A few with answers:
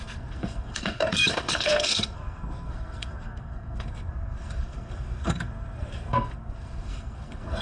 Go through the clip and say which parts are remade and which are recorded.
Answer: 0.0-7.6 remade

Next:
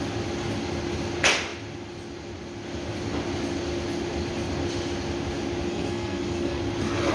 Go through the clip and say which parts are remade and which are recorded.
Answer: 0.0-5.7 recorded; 5.7-6.6 remade; 6.6-7.1 recorded

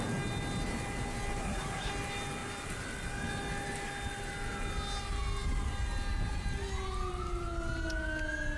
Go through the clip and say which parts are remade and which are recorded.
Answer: 0.0-1.4 recorded; 1.4-1.9 remade; 1.9-8.6 recorded

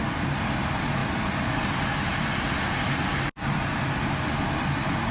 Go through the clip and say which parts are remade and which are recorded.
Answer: 0.0-5.1 recorded